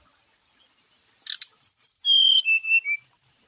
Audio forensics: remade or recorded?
recorded